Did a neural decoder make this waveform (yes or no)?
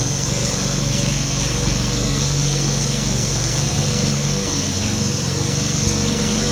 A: yes